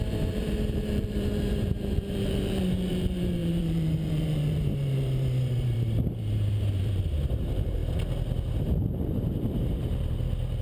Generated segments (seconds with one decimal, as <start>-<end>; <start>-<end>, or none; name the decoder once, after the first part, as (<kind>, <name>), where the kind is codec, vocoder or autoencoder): 0.0-7.8 (vocoder, BigVGAN v2); 8.6-10.6